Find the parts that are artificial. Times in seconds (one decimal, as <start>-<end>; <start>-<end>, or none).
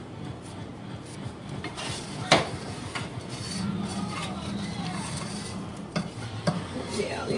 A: 0.0-0.7; 4.1-7.4